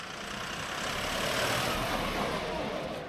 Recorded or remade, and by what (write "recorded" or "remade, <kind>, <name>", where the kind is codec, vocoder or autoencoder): remade, vocoder, BigVGAN v2